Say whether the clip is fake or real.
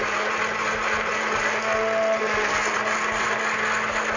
real